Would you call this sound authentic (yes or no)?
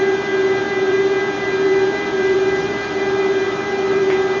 no